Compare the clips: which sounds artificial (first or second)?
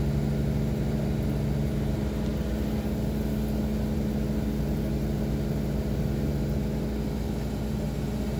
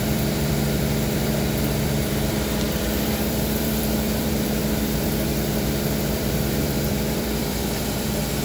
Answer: second